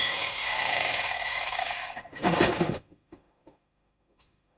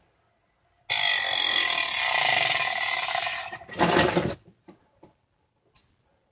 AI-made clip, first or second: first